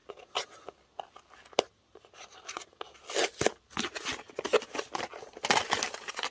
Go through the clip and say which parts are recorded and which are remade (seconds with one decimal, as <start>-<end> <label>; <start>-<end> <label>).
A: 0.0-6.3 recorded